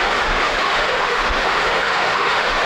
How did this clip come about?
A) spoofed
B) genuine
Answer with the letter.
A